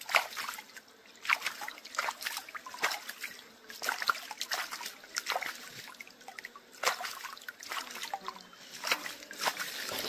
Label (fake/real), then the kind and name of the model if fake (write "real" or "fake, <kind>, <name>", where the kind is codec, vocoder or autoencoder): real